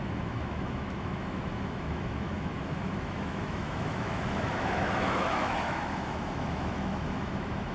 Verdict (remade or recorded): remade